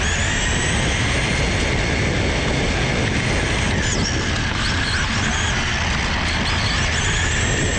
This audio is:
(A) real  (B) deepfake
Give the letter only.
A